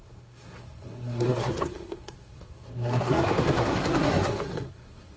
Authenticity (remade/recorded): remade